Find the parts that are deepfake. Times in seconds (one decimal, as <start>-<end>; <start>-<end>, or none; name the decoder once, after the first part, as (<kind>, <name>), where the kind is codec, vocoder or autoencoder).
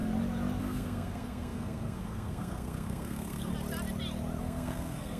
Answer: 0.6-3.5 (codec, SNAC); 4.4-5.2